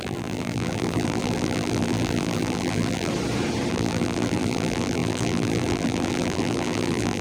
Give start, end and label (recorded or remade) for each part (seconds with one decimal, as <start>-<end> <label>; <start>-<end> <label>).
0.0-3.1 remade; 3.1-3.7 recorded; 3.7-7.2 remade